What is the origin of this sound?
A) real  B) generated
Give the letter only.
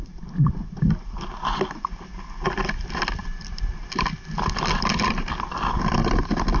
A